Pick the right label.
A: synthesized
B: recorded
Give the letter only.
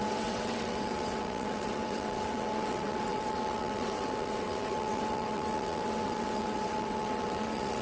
A